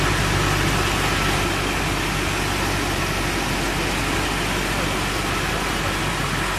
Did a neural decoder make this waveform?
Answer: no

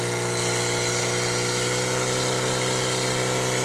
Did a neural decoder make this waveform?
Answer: no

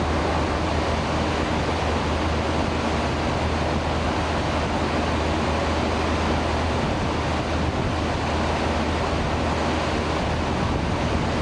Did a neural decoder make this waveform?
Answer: no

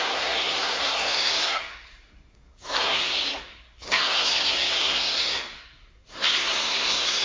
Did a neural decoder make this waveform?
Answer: yes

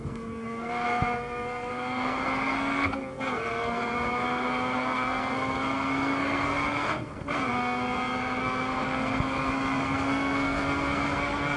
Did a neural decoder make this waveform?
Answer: yes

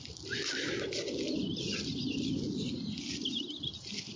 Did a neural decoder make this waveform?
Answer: no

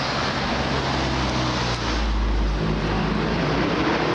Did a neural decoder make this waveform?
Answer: no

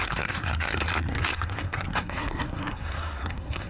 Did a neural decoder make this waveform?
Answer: yes